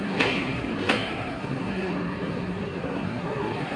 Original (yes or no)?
no